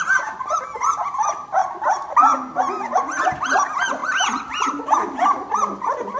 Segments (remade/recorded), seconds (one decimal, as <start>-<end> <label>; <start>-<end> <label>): 0.0-1.6 remade; 1.6-2.7 recorded; 2.7-6.2 remade